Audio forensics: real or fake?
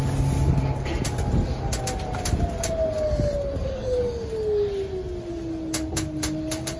real